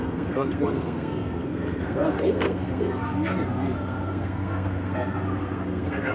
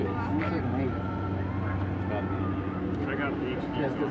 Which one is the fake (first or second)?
first